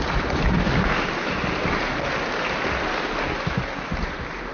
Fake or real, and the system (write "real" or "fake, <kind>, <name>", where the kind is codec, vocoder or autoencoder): real